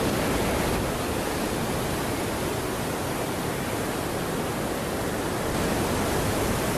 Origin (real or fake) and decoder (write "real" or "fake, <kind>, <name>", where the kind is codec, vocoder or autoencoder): real